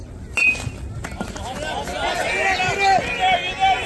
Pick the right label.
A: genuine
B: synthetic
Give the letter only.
A